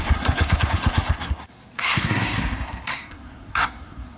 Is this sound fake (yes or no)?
yes